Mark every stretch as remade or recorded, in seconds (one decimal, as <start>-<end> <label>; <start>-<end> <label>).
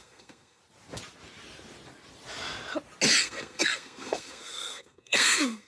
0.0-0.6 remade; 0.6-3.2 recorded; 3.2-5.7 remade